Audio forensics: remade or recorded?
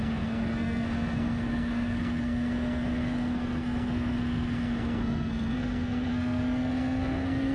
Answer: remade